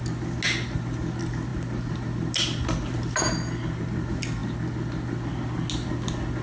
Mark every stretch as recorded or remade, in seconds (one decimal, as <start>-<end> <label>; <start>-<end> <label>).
0.0-6.4 recorded